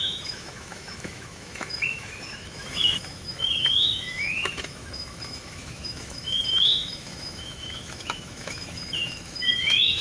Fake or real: fake